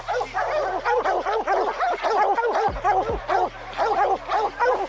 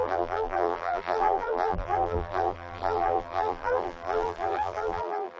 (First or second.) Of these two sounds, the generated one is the second